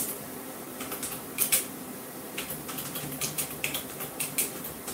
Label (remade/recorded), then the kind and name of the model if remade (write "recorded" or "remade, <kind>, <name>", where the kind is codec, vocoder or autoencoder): remade, vocoder, BigVGAN v2